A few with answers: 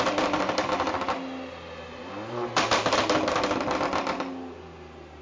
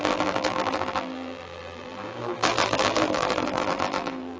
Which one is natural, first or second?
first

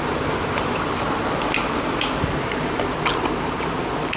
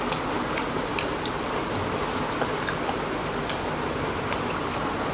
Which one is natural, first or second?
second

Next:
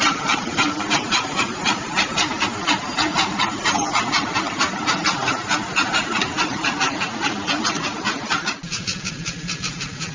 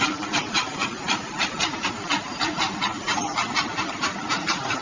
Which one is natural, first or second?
first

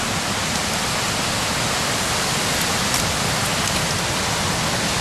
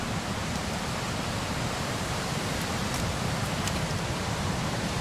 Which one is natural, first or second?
first